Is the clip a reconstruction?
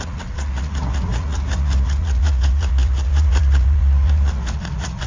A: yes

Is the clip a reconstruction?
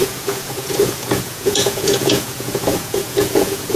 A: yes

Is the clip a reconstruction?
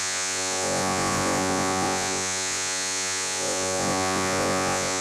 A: yes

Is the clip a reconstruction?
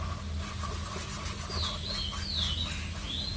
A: no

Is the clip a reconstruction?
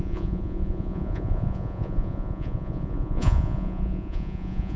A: yes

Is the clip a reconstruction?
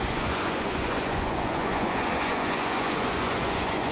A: yes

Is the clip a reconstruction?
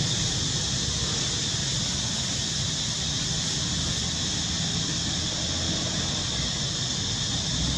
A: no